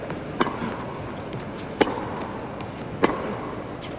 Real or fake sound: real